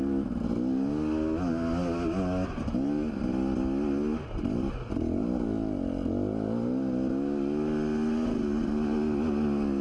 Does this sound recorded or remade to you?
recorded